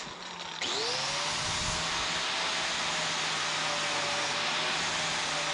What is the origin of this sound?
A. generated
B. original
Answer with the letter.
B